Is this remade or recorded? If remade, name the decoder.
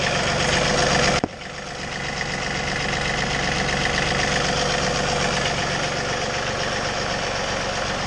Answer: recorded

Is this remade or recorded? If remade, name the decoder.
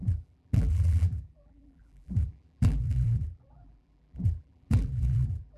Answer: remade, vocoder, BigVGAN v2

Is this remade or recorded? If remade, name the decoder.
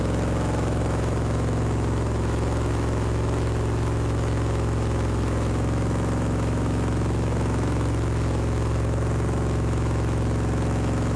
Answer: remade, autoencoder, DAC-VAE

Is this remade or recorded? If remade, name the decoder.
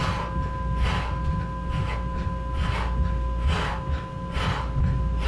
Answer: recorded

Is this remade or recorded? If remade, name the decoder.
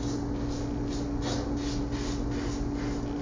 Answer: recorded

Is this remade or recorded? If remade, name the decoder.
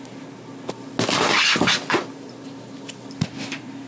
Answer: recorded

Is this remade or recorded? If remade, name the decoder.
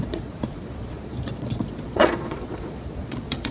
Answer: remade, vocoder, Vocos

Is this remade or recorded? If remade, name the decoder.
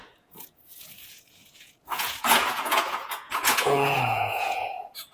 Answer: remade, vocoder, Vocos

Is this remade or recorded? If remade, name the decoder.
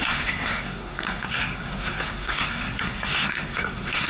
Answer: remade, codec, SNAC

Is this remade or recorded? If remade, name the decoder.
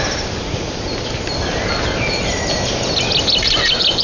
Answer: recorded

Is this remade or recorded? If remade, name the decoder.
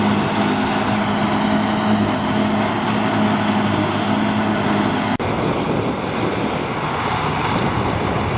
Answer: recorded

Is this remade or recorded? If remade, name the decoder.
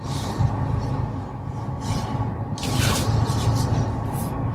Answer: recorded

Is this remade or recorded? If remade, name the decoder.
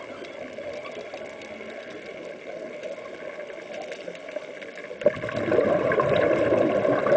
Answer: recorded